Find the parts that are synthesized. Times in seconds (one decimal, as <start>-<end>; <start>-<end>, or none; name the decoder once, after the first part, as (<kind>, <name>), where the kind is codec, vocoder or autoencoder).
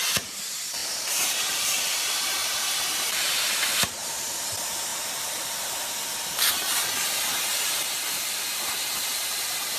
0.0-9.8 (vocoder, BigVGAN v2)